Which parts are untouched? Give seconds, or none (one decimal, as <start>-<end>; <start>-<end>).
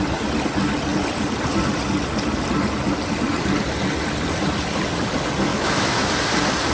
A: 0.0-5.5; 6.1-6.7